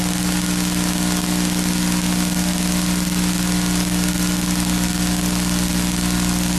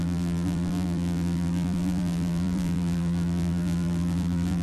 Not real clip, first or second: second